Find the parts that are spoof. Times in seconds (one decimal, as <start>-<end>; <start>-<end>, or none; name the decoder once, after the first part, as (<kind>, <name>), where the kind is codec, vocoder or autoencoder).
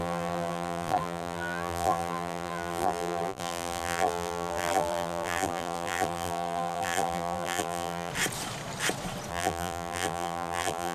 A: 0.0-8.1 (vocoder, BigVGAN v2); 9.3-10.9